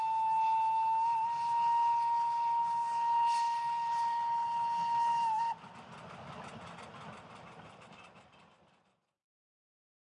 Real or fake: real